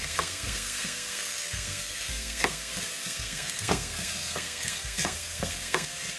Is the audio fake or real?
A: fake